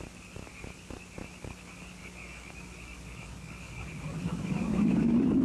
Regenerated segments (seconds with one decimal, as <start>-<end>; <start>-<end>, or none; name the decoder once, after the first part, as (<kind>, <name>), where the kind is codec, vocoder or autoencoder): 2.0-5.4 (codec, DAC)